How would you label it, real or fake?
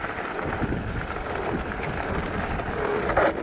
fake